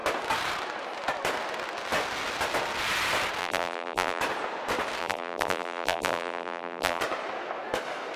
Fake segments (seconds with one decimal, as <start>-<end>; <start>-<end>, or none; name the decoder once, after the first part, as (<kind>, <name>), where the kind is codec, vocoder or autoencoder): 3.4-4.2 (vocoder, BigVGAN v2); 5.0-7.0